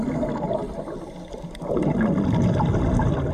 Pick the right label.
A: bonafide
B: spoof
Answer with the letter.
A